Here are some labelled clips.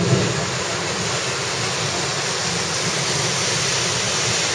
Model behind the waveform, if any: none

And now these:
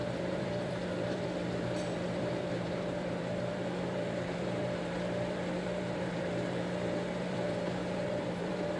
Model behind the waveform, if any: vocoder, BigVGAN v2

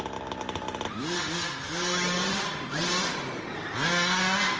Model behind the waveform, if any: none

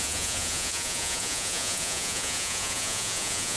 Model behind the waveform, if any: vocoder, Vocos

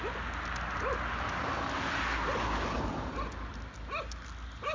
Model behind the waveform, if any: none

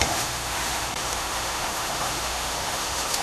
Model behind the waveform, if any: autoencoder, DAC-VAE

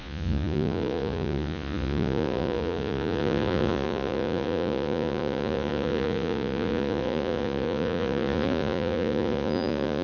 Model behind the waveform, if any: vocoder, Vocos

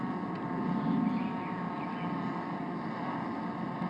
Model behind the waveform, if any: none